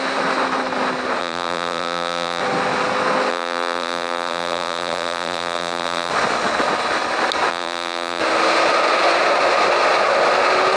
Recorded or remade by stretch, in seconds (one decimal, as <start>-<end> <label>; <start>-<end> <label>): 0.0-1.2 recorded; 1.2-2.4 remade; 2.4-3.3 recorded; 3.3-6.1 remade; 6.1-7.5 recorded; 7.5-8.2 remade; 8.2-10.8 recorded